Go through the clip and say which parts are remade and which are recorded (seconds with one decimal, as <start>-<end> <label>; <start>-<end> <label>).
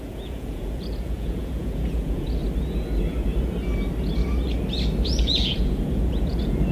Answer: 0.0-2.4 remade; 2.4-5.2 recorded; 5.2-6.7 remade